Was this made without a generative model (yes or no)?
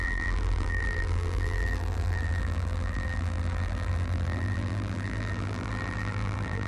no